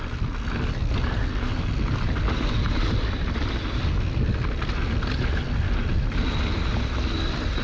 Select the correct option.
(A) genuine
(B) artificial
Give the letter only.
A